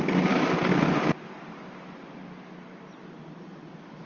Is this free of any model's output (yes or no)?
no